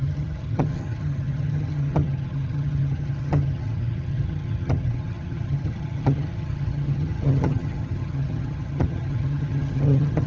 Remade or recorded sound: remade